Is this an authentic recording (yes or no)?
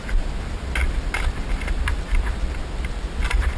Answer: yes